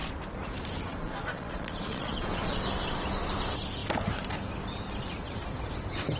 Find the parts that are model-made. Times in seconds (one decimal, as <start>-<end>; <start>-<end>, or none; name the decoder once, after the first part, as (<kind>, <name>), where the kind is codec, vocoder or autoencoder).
0.9-2.6 (vocoder, Vocos)